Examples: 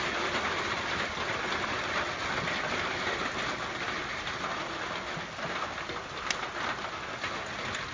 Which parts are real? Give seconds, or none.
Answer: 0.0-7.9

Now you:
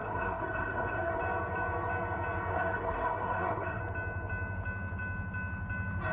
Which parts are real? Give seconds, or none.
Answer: 1.2-2.5; 3.8-6.1

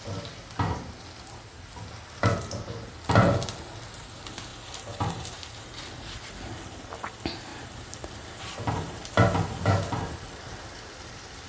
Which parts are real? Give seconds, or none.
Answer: 0.0-7.5; 9.0-11.5

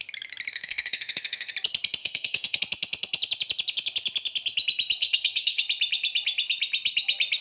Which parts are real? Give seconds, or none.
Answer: 0.0-0.5; 1.5-2.0; 2.6-5.0; 5.6-7.4